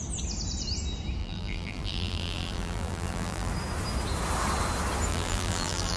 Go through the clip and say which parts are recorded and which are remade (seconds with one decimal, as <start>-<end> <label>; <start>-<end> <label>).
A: 0.0-1.2 recorded; 1.2-3.5 remade; 3.5-5.1 recorded; 5.1-6.0 remade